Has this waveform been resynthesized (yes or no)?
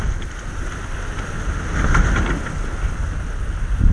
no